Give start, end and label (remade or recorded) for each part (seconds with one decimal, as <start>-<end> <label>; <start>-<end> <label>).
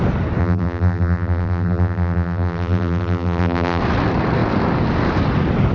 0.0-0.4 recorded; 0.4-3.8 remade; 3.8-5.7 recorded